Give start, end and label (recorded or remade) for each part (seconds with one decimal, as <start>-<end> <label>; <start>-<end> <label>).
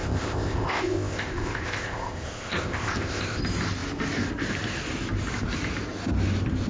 0.0-3.4 remade; 3.4-6.7 recorded